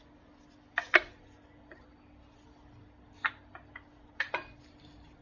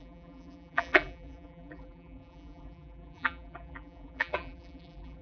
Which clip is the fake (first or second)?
second